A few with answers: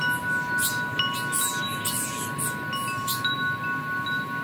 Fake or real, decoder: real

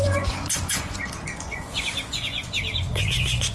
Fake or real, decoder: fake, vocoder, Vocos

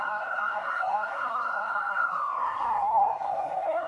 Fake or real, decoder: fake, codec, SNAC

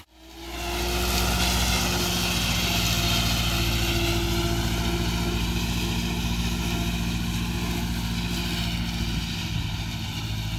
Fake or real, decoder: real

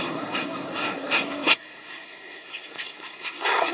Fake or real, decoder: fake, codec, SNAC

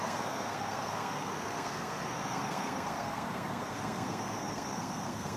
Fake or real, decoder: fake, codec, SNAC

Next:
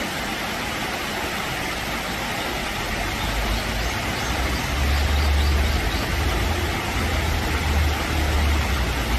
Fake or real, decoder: real